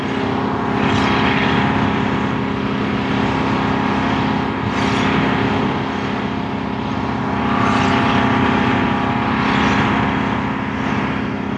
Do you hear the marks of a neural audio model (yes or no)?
no